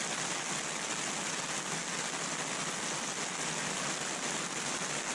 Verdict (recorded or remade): recorded